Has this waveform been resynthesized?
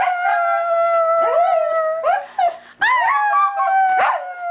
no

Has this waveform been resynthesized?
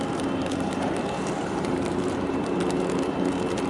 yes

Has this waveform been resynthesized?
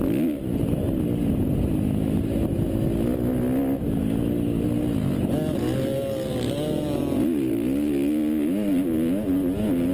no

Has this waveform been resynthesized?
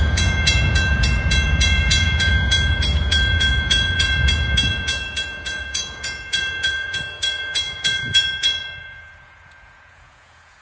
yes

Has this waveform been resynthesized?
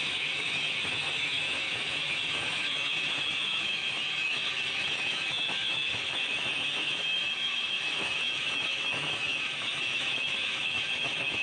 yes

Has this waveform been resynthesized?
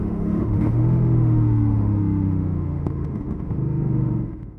yes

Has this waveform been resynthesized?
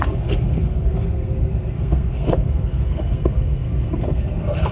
yes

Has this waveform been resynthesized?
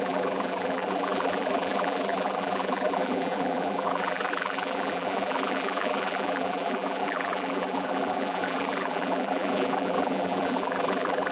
yes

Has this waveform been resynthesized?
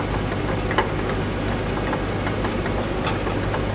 no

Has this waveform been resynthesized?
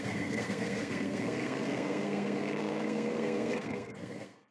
yes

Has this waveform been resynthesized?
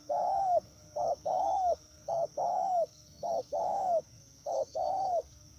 yes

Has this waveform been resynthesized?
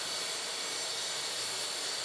yes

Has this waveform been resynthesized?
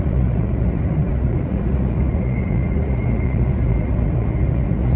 yes